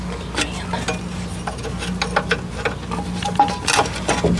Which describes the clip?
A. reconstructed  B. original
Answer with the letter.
B